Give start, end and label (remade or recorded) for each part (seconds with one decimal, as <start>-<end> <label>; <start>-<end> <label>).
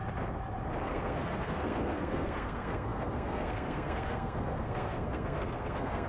0.0-0.8 recorded; 0.8-6.1 remade